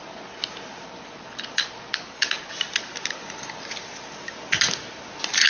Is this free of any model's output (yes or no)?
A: yes